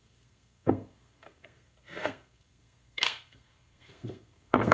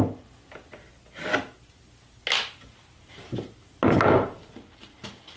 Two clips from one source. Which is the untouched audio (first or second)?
second